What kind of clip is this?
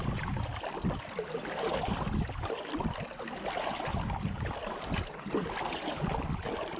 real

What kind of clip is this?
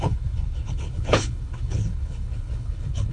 fake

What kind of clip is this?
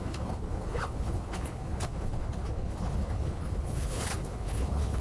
fake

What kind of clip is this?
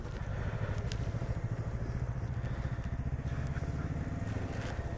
real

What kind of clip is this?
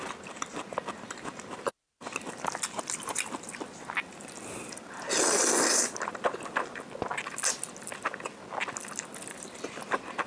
real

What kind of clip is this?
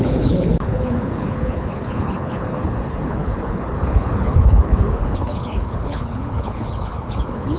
fake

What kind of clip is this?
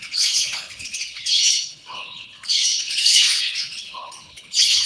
fake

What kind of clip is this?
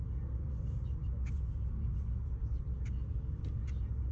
real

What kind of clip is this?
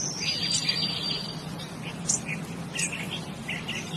real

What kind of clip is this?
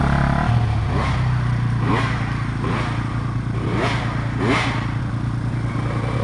real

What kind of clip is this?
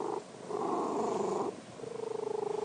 real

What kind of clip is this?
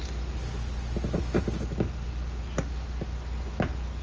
real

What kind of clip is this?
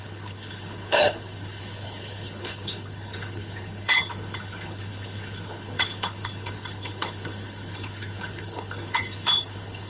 fake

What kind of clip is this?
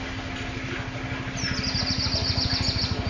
real